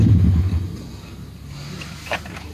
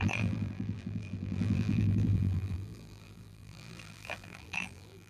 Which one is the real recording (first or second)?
first